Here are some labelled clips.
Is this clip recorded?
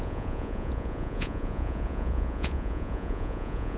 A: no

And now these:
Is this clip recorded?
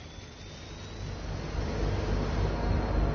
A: yes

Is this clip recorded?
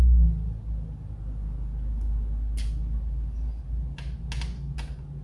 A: yes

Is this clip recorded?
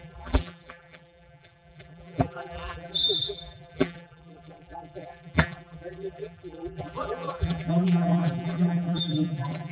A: no